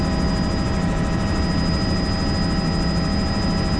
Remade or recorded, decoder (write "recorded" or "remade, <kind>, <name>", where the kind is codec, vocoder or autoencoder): recorded